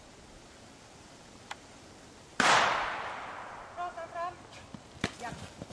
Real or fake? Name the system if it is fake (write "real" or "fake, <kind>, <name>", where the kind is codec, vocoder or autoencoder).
real